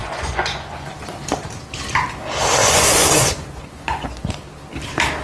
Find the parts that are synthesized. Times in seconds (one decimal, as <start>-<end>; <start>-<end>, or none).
0.0-0.9; 2.6-4.3